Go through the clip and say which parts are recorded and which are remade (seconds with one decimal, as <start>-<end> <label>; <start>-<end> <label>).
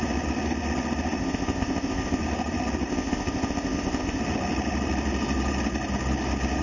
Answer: 0.0-1.2 recorded; 1.2-2.2 remade; 2.2-2.9 recorded; 2.9-4.2 remade; 4.2-6.6 recorded